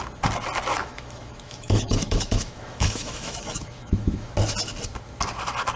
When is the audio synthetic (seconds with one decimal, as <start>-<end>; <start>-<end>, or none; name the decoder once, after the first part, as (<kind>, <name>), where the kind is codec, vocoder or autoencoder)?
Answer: 0.8-4.3 (autoencoder, DAC-VAE)